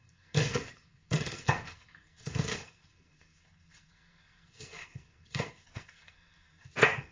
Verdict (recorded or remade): remade